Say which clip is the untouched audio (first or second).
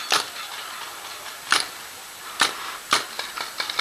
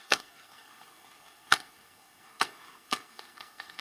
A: first